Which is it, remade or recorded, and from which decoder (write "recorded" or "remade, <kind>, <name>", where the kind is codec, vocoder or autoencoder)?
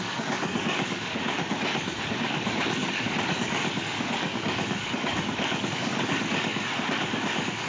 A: remade, codec, DAC